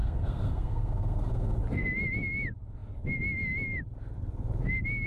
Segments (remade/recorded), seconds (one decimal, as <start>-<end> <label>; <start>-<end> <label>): 0.0-1.6 remade; 1.6-5.1 recorded

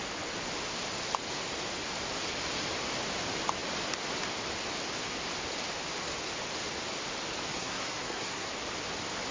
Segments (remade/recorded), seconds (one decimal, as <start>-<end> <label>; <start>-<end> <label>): 0.0-7.5 recorded; 7.5-8.5 remade; 8.5-9.3 recorded

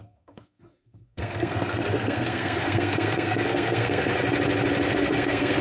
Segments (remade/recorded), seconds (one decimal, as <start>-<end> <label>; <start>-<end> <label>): 0.0-4.1 remade; 4.1-4.9 recorded; 4.9-5.6 remade

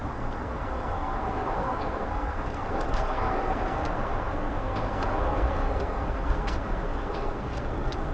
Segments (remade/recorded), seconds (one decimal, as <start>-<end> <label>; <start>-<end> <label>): 0.0-8.1 remade

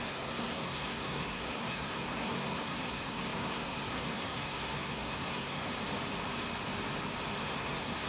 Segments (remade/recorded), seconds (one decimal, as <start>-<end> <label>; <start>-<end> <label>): 0.0-5.7 remade; 5.7-7.4 recorded; 7.4-8.1 remade